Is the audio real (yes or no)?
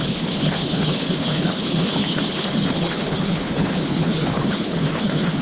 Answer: no